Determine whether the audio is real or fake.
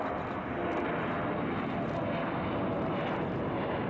real